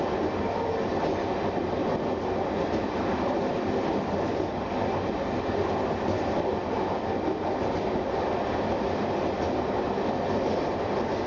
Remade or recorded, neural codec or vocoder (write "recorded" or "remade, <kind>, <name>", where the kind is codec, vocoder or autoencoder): recorded